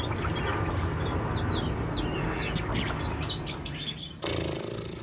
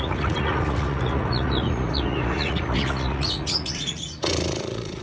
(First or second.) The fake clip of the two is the second